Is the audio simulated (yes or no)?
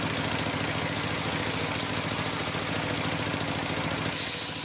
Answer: no